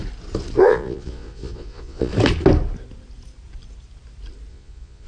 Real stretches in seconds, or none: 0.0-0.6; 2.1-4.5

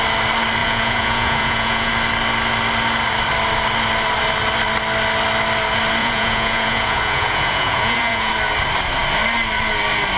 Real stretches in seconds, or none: 0.0-0.6; 1.9-6.0; 8.3-10.2

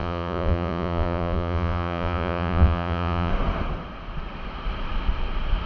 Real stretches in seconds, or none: 3.3-5.7